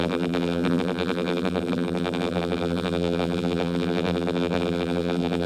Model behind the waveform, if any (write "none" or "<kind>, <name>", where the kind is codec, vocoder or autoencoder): vocoder, BigVGAN v2